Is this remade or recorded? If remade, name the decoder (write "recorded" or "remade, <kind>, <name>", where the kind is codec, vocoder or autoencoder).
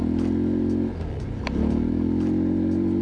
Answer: recorded